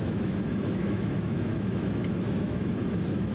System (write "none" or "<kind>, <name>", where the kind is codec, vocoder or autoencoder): autoencoder, DAC-VAE